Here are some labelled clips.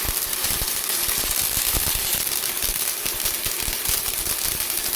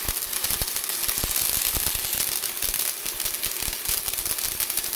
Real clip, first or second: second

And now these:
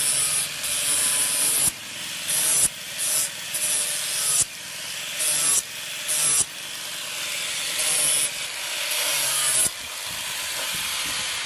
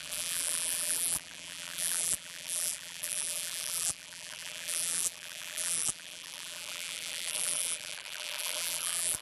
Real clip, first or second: first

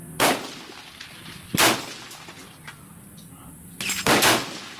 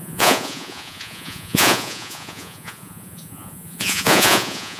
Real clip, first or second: first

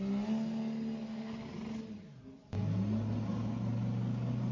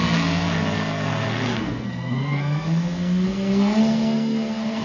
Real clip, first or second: first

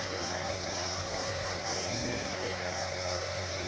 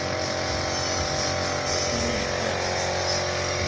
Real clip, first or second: second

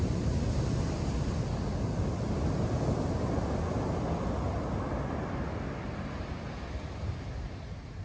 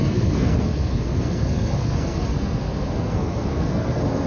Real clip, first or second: first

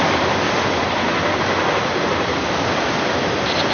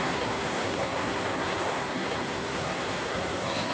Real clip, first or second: first